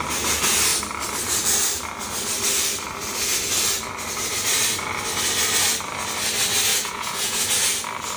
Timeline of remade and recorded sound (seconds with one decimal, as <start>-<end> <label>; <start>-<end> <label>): 0.0-6.7 recorded; 6.7-7.4 remade; 7.4-8.2 recorded